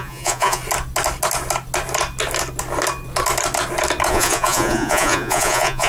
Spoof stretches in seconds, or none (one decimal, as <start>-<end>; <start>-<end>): 0.0-0.6; 4.1-5.9